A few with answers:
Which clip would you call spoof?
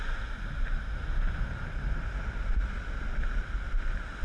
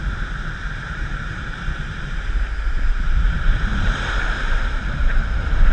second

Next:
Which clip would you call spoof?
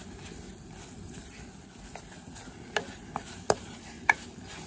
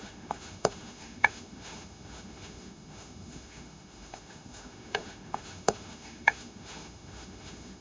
second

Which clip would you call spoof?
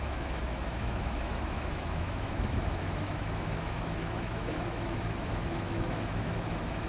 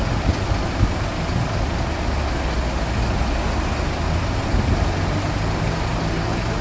first